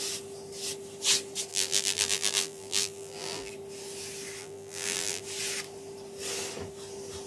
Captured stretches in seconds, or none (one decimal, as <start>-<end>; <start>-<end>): 0.0-1.5; 3.5-4.4; 5.2-7.3